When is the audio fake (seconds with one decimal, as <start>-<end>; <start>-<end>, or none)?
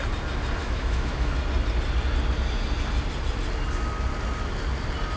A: 0.6-1.3